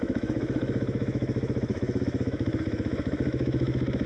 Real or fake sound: fake